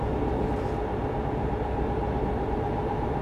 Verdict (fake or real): real